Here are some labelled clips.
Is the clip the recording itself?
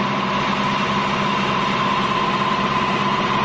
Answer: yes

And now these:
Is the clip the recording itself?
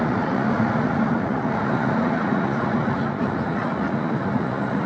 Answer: no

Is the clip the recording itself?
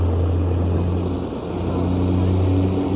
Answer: yes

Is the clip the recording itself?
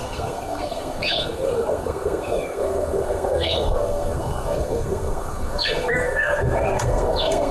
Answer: no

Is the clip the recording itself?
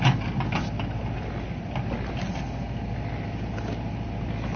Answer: yes